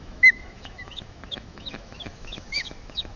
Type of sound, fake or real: fake